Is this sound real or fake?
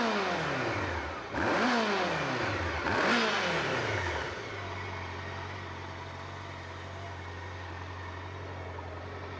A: real